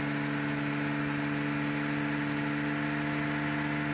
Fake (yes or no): no